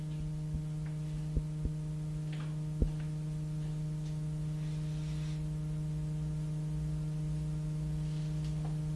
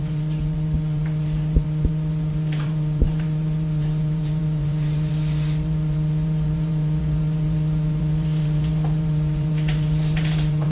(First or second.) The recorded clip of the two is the first